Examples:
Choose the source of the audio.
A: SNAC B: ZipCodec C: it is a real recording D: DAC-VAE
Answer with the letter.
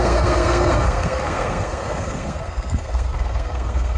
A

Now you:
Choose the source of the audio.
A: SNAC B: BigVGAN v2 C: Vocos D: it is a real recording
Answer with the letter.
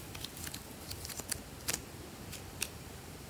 D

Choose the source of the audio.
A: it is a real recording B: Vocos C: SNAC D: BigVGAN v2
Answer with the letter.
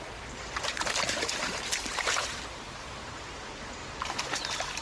D